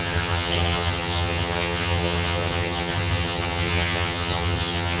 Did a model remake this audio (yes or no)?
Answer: yes